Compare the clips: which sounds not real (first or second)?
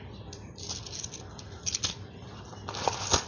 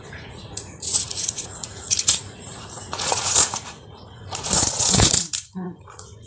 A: second